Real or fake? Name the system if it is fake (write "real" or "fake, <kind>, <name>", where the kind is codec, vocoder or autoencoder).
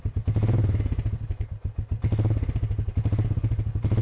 real